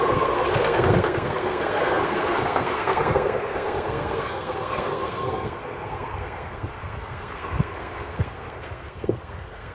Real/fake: fake